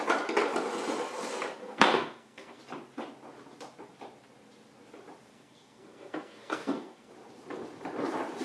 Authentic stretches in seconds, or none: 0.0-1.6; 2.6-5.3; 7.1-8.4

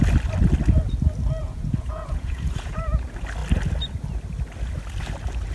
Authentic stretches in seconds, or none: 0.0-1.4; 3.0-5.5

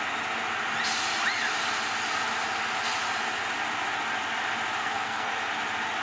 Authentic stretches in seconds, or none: 0.0-4.8; 5.3-6.0

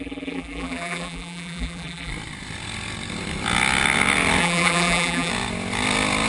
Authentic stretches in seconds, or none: 2.1-4.4; 5.3-6.3